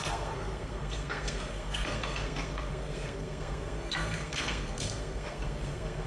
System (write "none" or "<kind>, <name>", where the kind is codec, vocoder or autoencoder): codec, SNAC